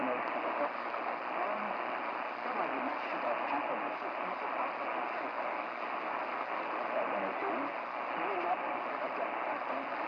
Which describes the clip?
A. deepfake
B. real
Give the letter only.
B